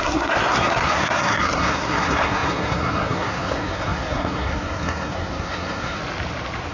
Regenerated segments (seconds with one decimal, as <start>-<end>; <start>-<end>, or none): 0.0-6.0